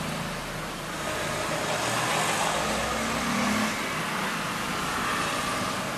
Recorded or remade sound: recorded